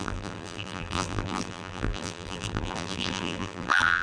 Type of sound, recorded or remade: remade